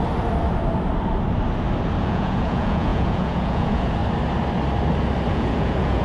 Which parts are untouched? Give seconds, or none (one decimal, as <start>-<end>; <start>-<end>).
0.0-2.0; 4.0-5.3